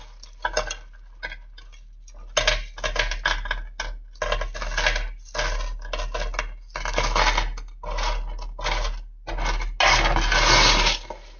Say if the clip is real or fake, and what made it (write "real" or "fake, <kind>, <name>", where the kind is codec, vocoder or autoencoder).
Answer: real